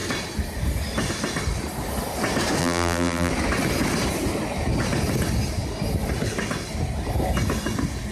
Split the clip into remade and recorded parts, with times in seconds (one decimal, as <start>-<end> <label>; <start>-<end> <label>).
0.0-2.6 recorded; 2.6-3.3 remade; 3.3-8.1 recorded